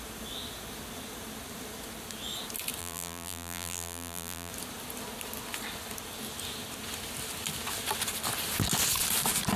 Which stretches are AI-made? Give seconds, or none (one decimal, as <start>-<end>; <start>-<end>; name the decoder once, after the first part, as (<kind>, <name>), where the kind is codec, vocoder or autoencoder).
2.8-4.5 (vocoder, BigVGAN v2)